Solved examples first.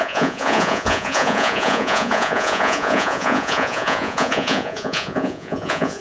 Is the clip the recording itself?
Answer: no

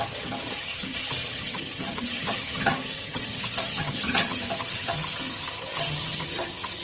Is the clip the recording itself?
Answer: no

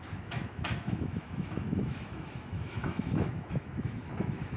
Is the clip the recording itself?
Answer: no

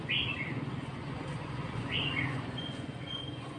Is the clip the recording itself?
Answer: no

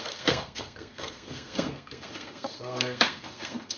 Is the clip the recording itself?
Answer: no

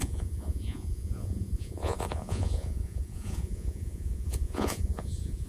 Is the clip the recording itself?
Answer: no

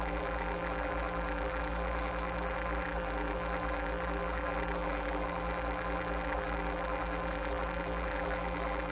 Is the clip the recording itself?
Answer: no